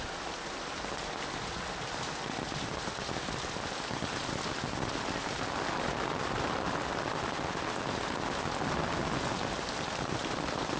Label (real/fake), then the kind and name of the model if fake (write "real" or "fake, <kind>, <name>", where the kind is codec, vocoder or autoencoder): real